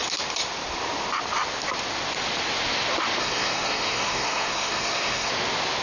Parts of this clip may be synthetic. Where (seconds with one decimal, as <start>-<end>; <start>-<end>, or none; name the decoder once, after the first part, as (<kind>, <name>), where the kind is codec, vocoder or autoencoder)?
3.2-5.3 (codec, SNAC)